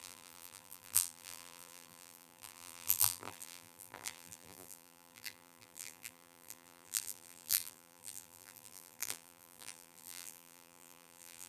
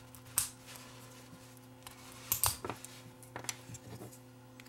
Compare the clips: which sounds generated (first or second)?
first